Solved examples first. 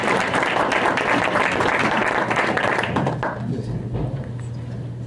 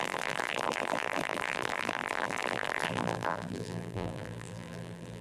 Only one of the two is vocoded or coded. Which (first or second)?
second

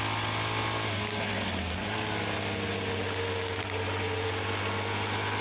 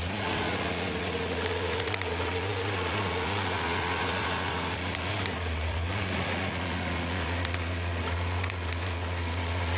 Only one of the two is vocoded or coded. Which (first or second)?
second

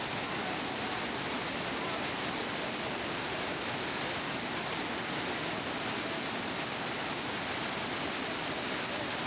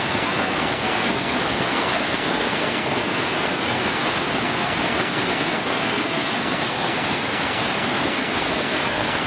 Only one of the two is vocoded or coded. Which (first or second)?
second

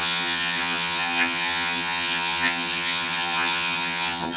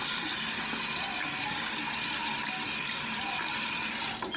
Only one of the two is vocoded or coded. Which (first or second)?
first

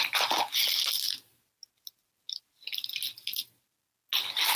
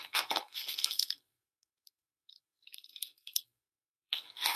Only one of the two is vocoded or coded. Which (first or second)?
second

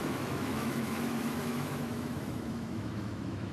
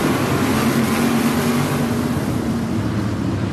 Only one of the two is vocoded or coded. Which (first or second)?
first